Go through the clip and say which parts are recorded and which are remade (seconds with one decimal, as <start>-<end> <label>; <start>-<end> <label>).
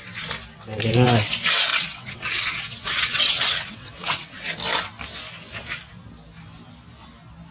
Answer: 0.0-1.7 recorded; 1.7-4.4 remade; 4.4-7.5 recorded